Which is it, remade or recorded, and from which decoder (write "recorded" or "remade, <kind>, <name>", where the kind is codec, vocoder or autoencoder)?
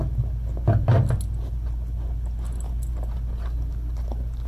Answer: recorded